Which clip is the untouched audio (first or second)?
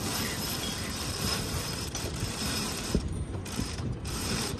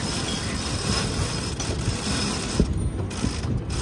second